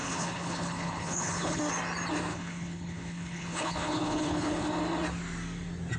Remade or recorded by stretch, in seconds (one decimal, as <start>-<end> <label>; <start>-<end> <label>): 0.0-1.6 remade; 1.6-2.3 recorded; 2.3-4.7 remade; 4.7-6.0 recorded